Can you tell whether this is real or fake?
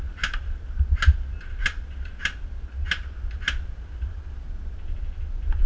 real